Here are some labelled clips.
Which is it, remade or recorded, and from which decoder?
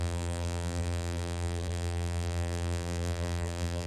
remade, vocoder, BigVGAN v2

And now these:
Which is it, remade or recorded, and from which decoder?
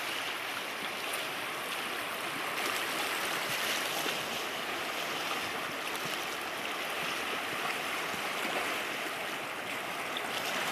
recorded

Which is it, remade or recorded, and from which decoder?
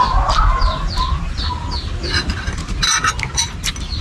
recorded